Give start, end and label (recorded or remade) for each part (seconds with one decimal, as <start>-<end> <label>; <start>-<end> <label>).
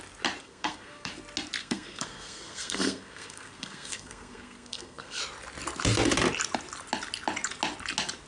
0.0-0.4 recorded; 0.4-1.1 remade; 1.1-1.6 recorded; 1.6-5.2 remade; 5.2-8.3 recorded